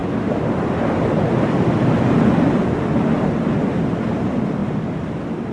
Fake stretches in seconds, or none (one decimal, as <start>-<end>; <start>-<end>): none